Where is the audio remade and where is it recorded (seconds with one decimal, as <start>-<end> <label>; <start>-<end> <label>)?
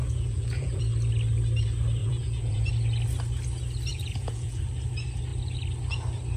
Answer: 0.0-0.8 remade; 0.8-2.0 recorded; 2.0-2.7 remade; 2.7-3.9 recorded; 3.9-4.6 remade; 4.6-6.4 recorded